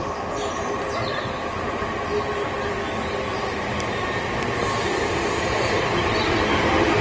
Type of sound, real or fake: real